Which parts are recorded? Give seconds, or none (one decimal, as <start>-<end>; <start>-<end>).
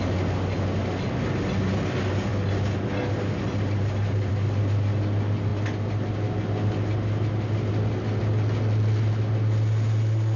0.0-10.4